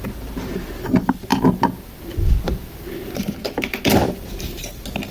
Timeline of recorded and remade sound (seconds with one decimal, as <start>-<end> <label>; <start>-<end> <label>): 0.0-5.1 recorded